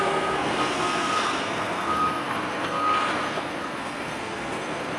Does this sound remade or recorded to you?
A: remade